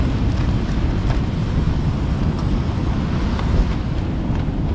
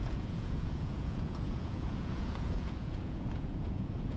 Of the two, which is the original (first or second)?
first